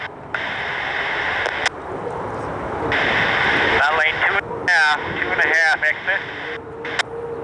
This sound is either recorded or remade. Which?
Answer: recorded